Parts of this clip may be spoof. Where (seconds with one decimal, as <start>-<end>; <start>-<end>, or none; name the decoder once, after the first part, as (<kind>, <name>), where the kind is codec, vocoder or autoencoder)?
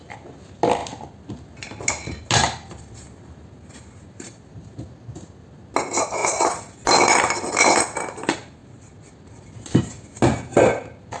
none